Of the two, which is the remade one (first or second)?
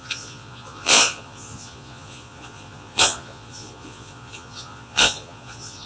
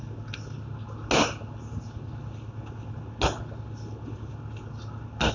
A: first